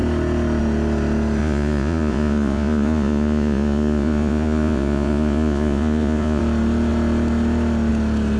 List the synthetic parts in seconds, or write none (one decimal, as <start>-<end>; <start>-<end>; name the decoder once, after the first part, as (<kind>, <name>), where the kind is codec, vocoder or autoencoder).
1.4-6.4 (vocoder, Vocos)